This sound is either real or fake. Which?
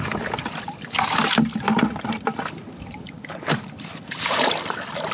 real